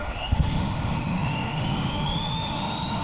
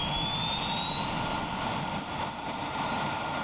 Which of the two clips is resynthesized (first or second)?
first